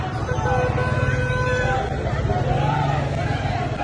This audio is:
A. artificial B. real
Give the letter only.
B